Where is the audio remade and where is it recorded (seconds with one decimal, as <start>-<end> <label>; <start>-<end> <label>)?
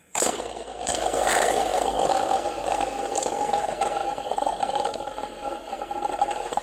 0.0-6.6 remade